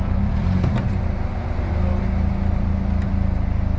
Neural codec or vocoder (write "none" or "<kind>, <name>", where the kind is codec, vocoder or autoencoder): none